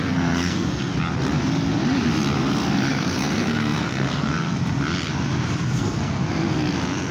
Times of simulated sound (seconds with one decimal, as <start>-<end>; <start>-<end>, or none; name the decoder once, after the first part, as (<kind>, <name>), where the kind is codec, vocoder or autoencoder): 0.0-0.9 (codec, SNAC); 2.9-4.6; 5.6-6.2